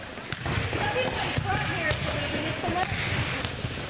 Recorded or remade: recorded